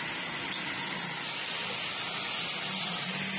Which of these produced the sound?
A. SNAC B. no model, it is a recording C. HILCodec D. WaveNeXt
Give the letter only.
B